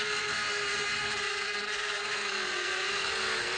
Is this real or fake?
fake